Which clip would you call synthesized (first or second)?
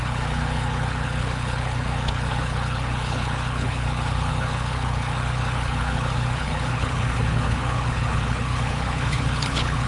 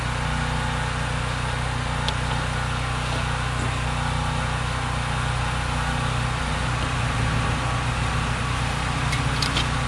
first